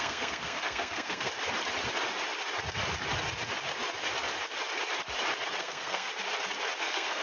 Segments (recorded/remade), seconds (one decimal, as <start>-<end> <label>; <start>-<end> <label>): 0.0-1.3 remade; 1.3-5.6 recorded; 5.6-6.1 remade; 6.1-6.8 recorded; 6.8-7.2 remade